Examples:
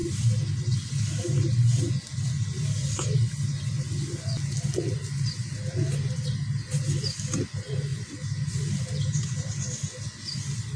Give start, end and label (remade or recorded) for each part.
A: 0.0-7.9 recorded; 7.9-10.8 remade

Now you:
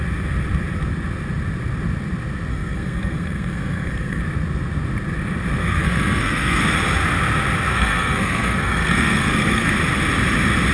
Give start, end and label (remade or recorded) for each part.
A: 0.0-2.5 recorded; 2.5-4.2 remade; 4.2-5.6 recorded; 5.6-6.6 remade; 6.6-7.7 recorded; 7.7-9.7 remade; 9.7-10.7 recorded